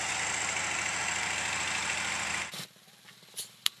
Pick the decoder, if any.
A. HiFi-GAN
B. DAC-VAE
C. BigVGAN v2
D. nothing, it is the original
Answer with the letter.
D